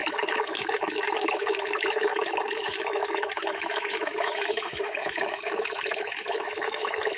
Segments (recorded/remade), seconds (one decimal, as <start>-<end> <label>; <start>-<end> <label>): 0.0-7.2 remade